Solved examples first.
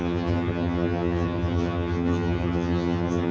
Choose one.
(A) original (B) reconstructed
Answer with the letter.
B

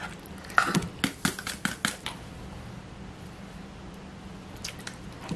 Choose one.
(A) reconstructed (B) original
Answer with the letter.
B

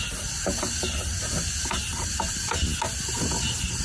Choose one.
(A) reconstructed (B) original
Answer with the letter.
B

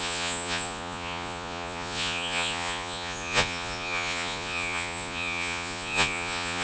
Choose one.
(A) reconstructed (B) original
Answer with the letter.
A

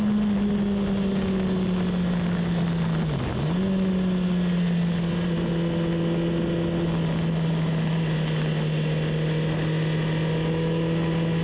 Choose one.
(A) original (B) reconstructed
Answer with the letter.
A